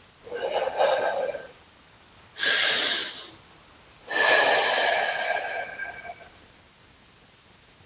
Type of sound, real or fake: real